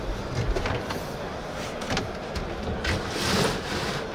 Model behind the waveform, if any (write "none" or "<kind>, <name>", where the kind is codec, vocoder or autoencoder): none